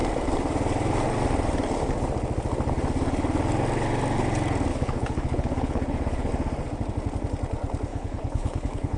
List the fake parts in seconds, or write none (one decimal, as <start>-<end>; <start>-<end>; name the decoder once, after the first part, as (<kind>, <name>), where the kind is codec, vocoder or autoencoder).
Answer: 4.7-6.3 (codec, HILCodec); 7.9-9.0